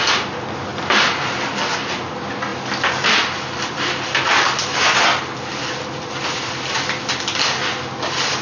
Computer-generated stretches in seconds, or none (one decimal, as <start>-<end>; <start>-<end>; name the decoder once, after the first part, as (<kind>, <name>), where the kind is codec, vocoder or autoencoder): none